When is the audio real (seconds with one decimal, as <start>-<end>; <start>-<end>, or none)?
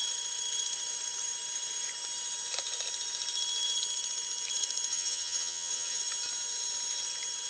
0.0-4.9; 6.0-7.5